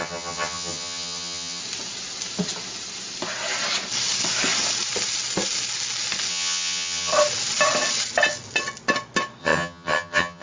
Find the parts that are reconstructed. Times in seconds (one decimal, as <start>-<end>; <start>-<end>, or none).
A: 0.0-1.6; 6.3-7.1; 9.4-10.4